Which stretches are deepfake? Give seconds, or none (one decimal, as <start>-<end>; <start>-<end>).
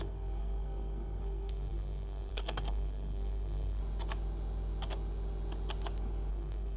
0.0-3.8; 6.3-6.8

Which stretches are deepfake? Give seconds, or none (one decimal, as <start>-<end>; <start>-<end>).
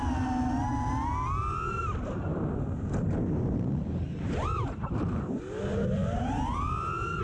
2.3-5.6; 6.0-6.6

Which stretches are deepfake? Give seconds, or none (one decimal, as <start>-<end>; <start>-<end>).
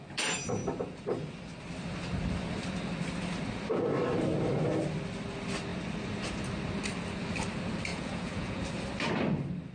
7.9-8.6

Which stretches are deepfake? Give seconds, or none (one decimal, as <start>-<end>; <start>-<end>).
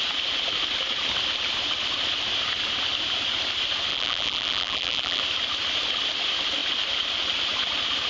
3.9-5.2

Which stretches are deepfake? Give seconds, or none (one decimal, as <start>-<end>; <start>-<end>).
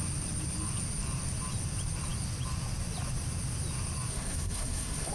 4.1-5.1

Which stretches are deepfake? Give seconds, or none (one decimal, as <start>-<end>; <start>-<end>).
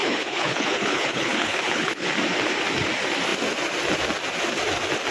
0.0-2.1